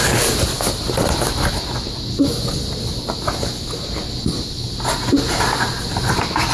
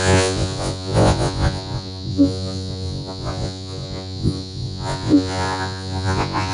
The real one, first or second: first